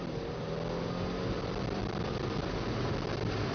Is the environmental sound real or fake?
real